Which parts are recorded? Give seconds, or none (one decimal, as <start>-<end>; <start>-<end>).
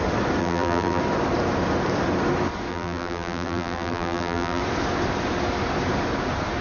0.0-0.4; 1.0-2.7; 4.6-6.6